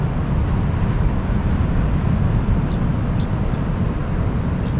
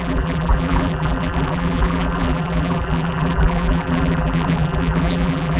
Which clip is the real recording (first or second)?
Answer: first